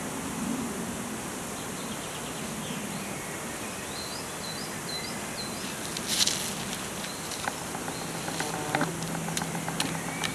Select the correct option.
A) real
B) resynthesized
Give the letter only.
A